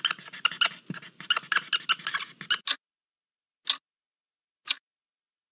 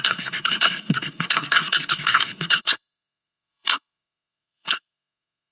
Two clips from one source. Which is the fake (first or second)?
second